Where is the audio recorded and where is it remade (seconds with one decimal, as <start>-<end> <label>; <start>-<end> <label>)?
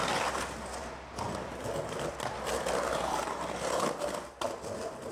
0.0-5.1 recorded